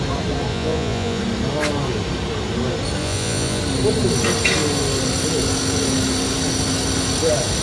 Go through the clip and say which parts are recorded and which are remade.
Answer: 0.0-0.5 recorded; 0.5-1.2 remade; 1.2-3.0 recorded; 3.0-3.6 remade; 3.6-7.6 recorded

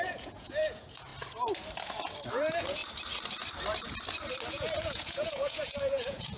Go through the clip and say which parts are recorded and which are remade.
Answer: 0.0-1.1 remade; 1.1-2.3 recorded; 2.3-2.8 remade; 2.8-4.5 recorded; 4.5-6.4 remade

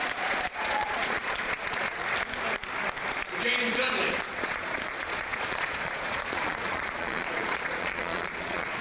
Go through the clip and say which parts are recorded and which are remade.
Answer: 0.0-2.0 remade; 2.0-4.2 recorded; 4.2-8.8 remade

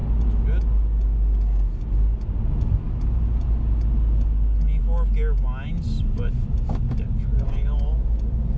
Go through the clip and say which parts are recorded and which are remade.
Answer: 0.0-8.6 recorded

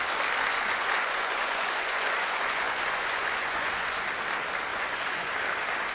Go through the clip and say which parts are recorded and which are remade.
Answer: 0.0-0.5 recorded; 0.5-4.0 remade; 4.0-4.7 recorded; 4.7-5.3 remade; 5.3-5.9 recorded